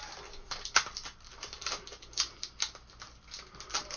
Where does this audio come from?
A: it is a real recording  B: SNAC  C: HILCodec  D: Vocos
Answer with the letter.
A